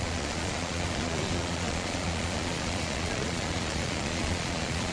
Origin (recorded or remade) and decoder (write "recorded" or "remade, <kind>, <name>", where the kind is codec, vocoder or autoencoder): remade, vocoder, Vocos